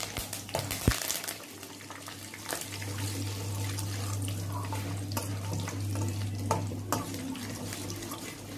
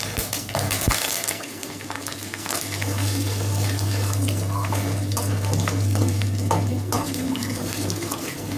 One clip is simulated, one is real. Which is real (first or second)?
first